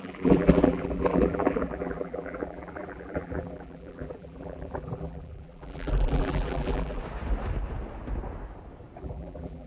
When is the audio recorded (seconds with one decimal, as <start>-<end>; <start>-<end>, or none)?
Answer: 7.0-9.0